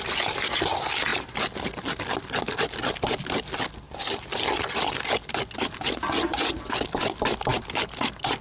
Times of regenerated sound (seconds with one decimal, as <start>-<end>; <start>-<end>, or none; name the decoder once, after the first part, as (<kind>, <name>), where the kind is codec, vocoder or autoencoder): none